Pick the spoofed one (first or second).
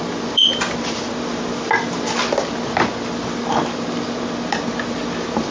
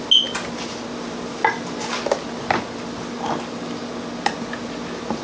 first